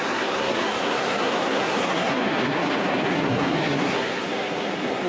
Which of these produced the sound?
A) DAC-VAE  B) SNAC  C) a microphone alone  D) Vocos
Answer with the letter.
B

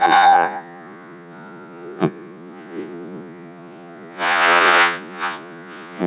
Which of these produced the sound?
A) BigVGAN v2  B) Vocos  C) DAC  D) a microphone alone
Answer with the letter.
B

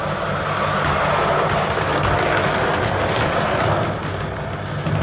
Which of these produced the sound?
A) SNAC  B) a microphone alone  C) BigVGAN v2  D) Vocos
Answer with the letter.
B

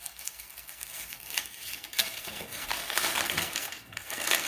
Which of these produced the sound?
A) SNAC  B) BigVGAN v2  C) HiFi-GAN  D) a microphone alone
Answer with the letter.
A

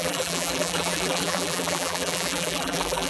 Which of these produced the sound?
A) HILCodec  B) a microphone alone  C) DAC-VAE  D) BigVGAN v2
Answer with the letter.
D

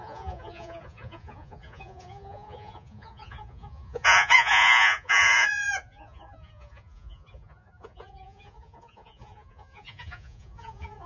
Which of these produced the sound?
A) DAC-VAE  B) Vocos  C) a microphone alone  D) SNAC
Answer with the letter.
B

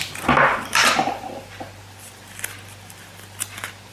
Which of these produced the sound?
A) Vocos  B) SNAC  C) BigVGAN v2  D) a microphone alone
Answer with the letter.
D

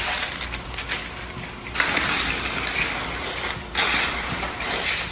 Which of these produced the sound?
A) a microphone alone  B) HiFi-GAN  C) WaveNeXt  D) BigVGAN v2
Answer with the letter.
A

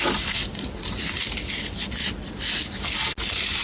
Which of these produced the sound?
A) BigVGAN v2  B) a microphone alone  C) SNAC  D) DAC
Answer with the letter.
B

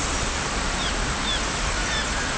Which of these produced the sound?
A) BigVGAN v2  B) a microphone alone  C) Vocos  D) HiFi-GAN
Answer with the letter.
B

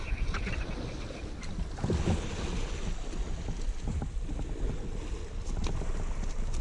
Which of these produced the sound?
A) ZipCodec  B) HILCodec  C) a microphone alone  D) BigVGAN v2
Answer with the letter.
C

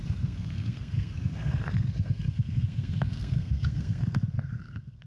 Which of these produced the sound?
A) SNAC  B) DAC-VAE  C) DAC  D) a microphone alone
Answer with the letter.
A